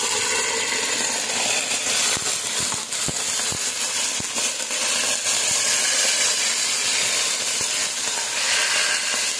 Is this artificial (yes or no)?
no